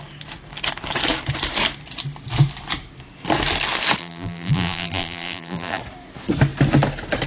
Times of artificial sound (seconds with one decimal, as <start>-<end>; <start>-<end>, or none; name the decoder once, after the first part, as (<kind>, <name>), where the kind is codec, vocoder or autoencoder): 4.0-5.8 (vocoder, BigVGAN v2)

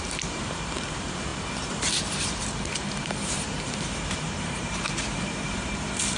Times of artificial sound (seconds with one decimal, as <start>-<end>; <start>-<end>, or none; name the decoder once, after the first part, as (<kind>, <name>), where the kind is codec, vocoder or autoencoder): 0.0-6.2 (vocoder, BigVGAN v2)